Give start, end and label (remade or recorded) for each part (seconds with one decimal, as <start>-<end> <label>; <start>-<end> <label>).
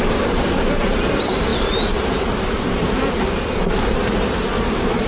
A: 0.0-5.1 remade